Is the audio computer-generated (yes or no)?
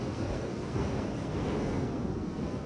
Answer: yes